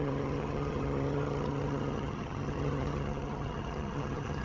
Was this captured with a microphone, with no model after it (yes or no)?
no